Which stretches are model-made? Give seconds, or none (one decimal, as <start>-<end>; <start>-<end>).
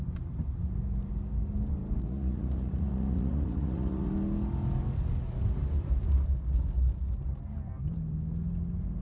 2.0-4.1